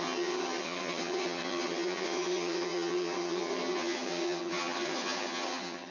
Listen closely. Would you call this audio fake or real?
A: fake